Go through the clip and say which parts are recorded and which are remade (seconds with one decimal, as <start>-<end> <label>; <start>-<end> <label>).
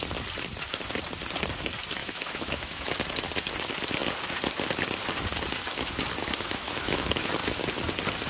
0.0-2.0 recorded; 2.0-2.9 remade; 2.9-6.2 recorded; 6.2-7.3 remade; 7.3-8.3 recorded